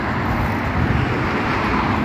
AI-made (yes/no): no